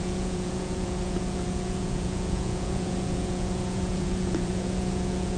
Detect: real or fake fake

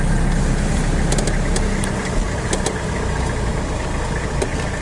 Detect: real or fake real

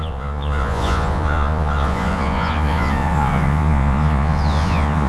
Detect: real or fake fake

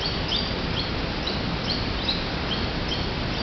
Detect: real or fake real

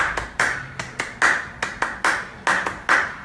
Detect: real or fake real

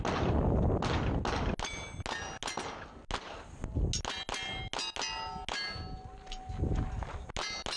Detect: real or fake real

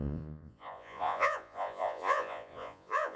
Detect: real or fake fake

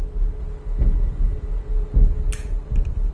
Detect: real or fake real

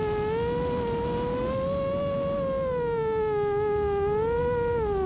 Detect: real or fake real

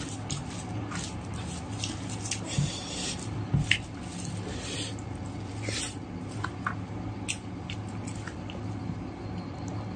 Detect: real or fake real